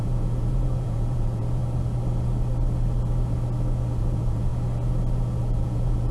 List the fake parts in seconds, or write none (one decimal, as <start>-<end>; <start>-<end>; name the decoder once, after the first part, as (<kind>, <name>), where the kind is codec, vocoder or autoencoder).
0.0-1.6 (vocoder, Vocos); 4.0-4.5; 5.4-6.1